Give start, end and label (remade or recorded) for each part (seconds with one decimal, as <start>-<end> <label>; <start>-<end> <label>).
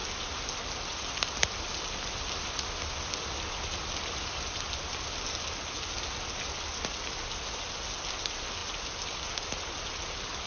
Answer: 0.0-10.5 recorded